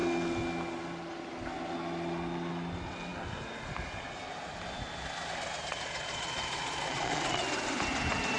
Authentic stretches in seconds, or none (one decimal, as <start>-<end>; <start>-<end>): 0.0-5.7; 7.4-8.4